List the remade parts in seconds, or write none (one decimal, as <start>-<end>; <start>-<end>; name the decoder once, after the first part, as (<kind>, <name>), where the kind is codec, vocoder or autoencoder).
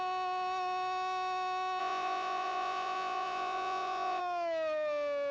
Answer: 1.8-4.2 (vocoder, Vocos)